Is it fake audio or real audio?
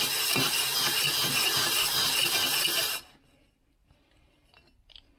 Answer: real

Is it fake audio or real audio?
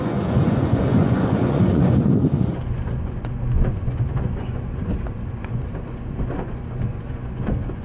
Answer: fake